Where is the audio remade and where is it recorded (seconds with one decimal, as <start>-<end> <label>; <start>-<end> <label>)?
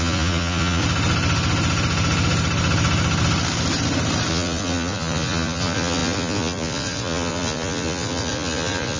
0.0-0.8 remade; 0.8-4.3 recorded; 4.3-9.0 remade